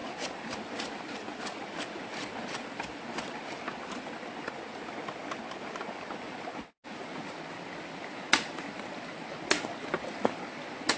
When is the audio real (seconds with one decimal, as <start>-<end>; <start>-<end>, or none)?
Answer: 0.0-11.0